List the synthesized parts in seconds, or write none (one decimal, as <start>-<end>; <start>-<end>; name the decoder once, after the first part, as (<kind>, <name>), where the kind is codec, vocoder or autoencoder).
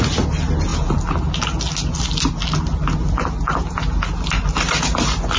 none